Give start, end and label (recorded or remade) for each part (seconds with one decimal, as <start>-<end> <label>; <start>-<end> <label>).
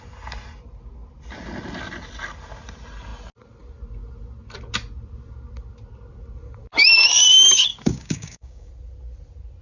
0.0-7.7 recorded; 7.7-8.7 remade; 8.7-9.6 recorded